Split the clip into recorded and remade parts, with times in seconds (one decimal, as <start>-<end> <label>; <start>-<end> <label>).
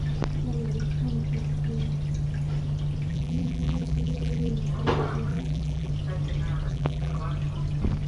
0.0-3.1 recorded; 3.1-4.5 remade; 4.5-5.3 recorded; 5.3-5.9 remade; 5.9-6.7 recorded; 6.7-7.2 remade; 7.2-8.1 recorded